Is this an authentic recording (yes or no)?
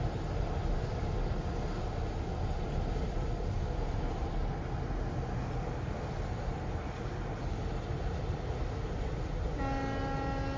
yes